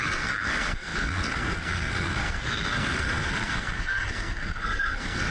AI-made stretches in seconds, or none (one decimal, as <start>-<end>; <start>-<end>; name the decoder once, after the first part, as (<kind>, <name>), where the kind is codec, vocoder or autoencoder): 0.0-5.3 (codec, SNAC)